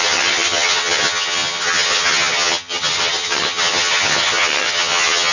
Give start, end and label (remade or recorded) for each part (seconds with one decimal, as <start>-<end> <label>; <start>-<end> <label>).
0.0-5.3 remade